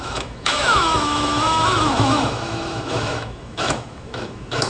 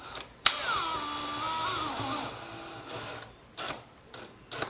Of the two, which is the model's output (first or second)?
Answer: first